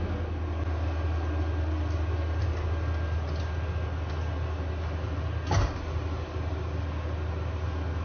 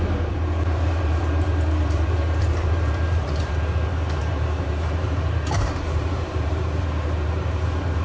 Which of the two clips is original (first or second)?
first